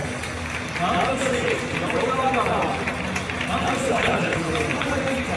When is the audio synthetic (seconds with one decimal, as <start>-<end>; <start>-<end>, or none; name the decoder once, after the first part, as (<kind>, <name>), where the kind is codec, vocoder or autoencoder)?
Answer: 3.9-4.5 (codec, HILCodec)